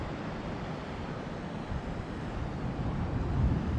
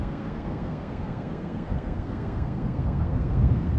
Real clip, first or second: first